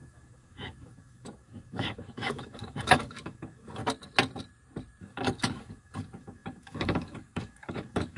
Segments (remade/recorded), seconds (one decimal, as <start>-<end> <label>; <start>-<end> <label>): 0.0-3.8 remade; 3.8-5.0 recorded; 5.0-8.2 remade

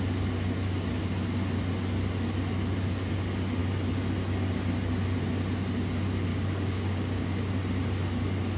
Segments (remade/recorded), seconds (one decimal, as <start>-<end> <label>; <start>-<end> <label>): 0.0-6.3 recorded; 6.3-7.5 remade; 7.5-8.6 recorded

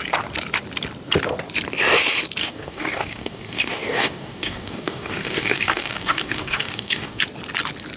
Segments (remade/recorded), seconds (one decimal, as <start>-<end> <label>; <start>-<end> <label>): 0.0-2.4 recorded; 2.4-7.2 remade; 7.2-8.0 recorded

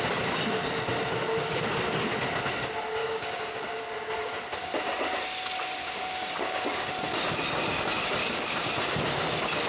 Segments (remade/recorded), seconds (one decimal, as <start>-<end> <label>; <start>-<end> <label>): 0.0-3.0 recorded; 3.0-3.7 remade; 3.7-5.8 recorded; 5.8-6.9 remade; 6.9-8.2 recorded; 8.2-8.7 remade; 8.7-9.7 recorded

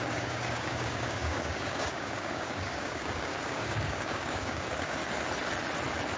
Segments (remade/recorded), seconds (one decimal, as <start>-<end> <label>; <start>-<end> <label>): 0.0-5.0 remade; 5.0-6.2 recorded

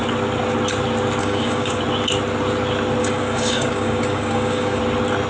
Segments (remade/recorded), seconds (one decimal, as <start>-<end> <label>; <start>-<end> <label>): 0.0-1.2 recorded; 1.2-1.8 remade; 1.8-3.0 recorded; 3.0-4.8 remade; 4.8-5.3 recorded

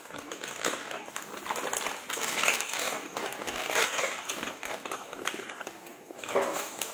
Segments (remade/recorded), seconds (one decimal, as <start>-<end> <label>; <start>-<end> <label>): 0.0-1.3 remade; 1.3-2.1 recorded; 2.1-6.9 remade

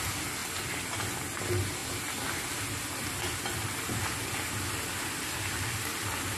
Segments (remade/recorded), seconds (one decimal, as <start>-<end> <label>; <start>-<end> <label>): 0.0-6.4 recorded